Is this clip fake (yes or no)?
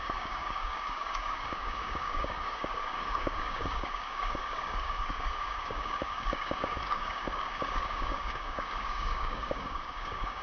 yes